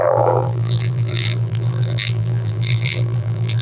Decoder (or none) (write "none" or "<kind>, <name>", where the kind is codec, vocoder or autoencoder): vocoder, BigVGAN v2